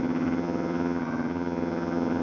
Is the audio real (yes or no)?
no